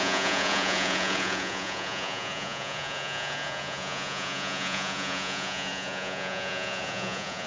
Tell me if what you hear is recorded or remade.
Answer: remade